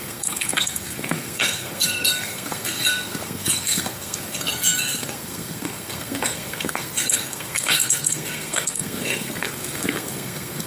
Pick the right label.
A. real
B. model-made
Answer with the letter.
B